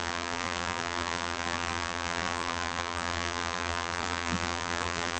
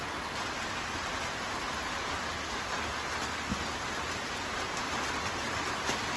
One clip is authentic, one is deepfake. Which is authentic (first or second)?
second